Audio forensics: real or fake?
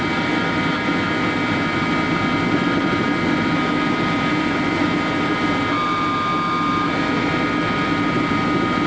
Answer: real